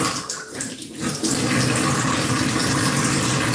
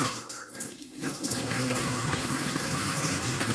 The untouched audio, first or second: first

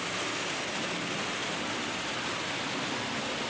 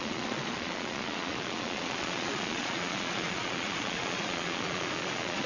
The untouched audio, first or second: first